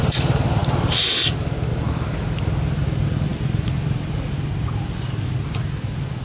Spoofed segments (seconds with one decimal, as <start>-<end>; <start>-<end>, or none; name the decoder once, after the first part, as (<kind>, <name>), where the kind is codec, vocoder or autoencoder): 3.3-4.4 (vocoder, BigVGAN v2)